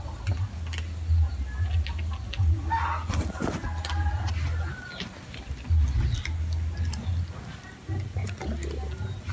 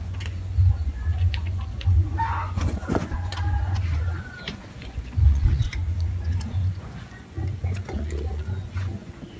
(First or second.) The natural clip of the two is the first